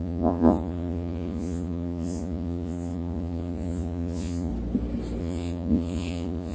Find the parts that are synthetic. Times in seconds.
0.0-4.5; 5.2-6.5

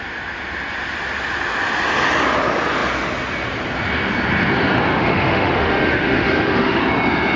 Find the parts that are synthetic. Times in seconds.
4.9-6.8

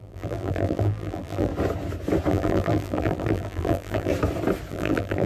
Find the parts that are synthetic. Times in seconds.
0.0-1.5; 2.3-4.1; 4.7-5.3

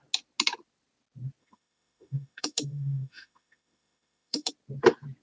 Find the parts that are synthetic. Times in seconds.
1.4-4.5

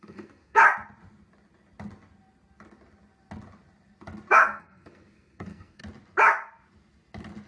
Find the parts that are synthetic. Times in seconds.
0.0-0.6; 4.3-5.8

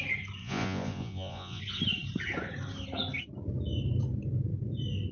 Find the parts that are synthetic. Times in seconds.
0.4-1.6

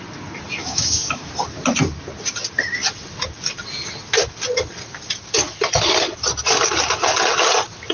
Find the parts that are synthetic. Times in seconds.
0.6-1.3